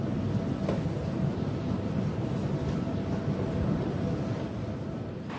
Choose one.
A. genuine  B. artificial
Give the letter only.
A